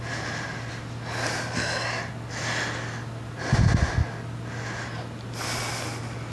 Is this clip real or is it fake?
real